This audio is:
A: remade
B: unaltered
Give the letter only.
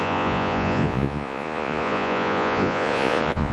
A